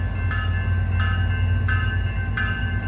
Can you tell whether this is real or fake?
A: real